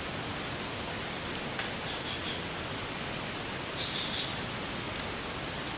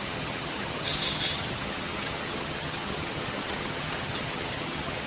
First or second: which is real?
first